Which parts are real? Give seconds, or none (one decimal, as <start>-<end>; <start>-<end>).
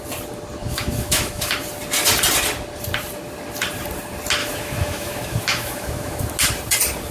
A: 0.0-0.6; 1.5-4.4; 6.3-7.1